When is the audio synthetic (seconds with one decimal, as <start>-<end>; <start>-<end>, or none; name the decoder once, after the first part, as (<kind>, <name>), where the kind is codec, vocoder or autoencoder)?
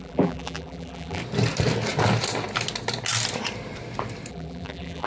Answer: 0.0-1.2 (vocoder, BigVGAN v2); 4.3-5.1